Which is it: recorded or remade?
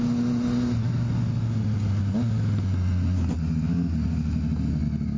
recorded